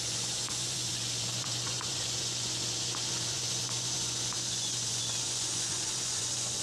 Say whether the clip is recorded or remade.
remade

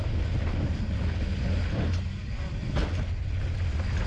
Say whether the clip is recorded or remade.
recorded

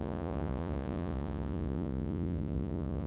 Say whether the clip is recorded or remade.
remade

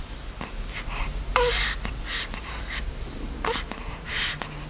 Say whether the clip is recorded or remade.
recorded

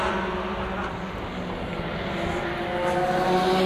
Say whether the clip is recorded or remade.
recorded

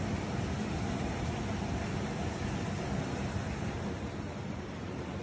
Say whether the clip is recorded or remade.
recorded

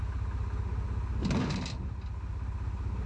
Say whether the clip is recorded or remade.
recorded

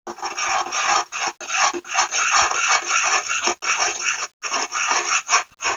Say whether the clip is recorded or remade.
recorded